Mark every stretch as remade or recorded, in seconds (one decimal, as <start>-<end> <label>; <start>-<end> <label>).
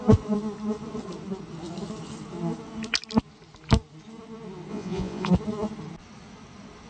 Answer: 0.0-4.7 recorded; 4.7-5.3 remade; 5.3-6.9 recorded